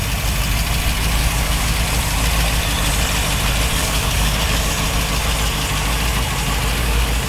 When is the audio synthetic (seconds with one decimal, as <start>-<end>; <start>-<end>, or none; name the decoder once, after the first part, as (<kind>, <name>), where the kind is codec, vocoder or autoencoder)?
1.2-1.8 (codec, DAC); 3.8-4.7; 6.8-7.3